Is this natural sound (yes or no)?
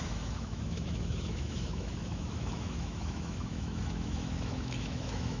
no